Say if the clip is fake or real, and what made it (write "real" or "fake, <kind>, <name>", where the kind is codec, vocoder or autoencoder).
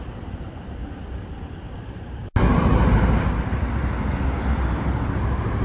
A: real